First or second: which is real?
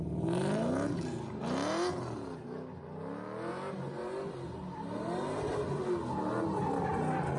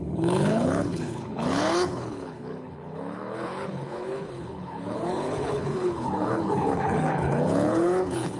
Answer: first